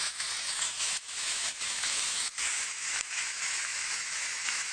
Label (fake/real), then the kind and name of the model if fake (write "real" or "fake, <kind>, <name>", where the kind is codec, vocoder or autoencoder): fake, autoencoder, DAC-VAE